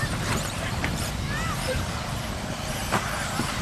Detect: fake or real fake